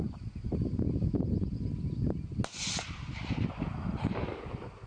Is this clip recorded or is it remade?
recorded